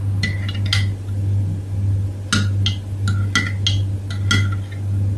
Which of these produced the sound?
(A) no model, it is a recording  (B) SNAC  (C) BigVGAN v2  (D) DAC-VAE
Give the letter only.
A